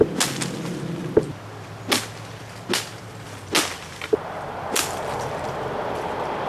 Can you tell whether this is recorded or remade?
recorded